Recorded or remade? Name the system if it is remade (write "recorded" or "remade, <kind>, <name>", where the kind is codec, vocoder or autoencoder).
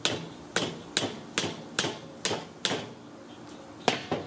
recorded